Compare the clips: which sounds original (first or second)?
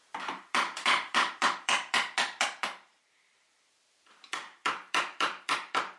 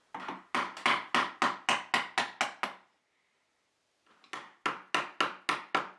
second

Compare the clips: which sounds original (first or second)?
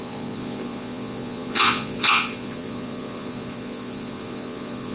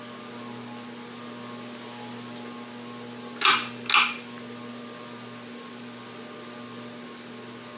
second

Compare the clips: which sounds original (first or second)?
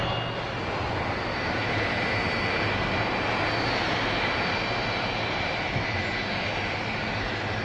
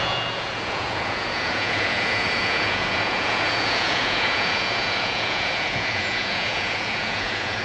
first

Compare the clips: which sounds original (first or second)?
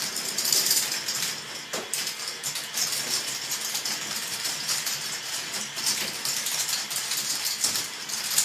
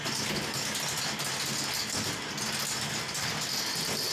second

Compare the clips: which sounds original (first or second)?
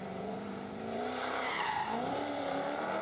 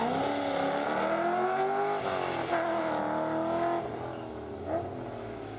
second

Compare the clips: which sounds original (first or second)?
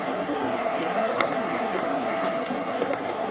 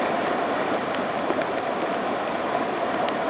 second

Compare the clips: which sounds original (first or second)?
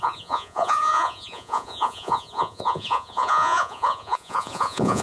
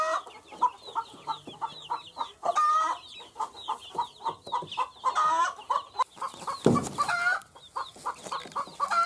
second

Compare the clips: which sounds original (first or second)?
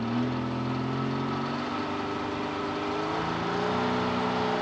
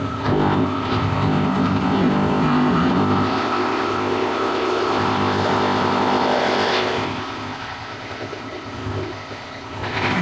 first